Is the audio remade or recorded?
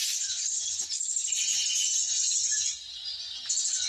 recorded